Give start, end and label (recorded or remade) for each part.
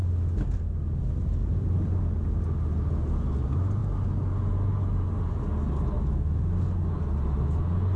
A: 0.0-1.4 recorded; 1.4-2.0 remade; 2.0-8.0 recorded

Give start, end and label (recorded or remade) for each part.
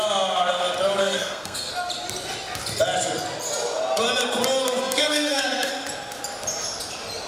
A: 0.0-1.0 recorded; 1.0-1.7 remade; 1.7-4.8 recorded; 4.8-5.7 remade; 5.7-7.3 recorded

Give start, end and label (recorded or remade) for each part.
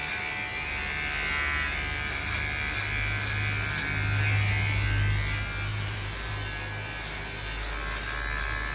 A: 0.0-5.7 recorded; 5.7-6.3 remade; 6.3-8.7 recorded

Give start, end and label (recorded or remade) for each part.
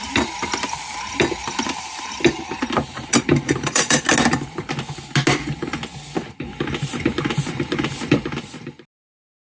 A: 0.0-1.4 recorded; 1.4-4.0 remade; 4.0-9.4 recorded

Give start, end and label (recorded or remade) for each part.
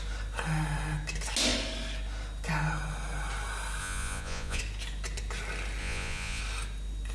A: 0.0-3.8 recorded; 3.8-4.6 remade; 4.6-5.8 recorded; 5.8-6.4 remade; 6.4-7.1 recorded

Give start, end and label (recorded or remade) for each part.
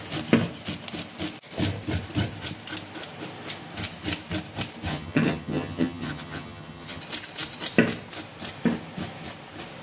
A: 0.0-4.9 recorded; 4.9-7.0 remade; 7.0-9.8 recorded